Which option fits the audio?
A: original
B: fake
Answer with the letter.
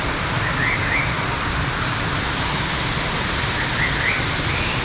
A